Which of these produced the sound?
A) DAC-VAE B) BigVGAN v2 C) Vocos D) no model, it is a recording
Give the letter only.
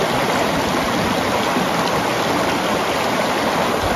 D